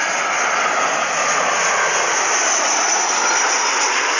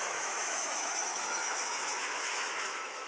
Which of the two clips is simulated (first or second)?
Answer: second